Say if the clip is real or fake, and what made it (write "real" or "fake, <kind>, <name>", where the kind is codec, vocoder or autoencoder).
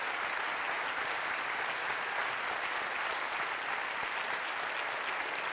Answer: real